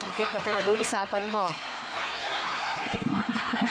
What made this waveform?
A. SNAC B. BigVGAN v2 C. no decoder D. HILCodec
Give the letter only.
A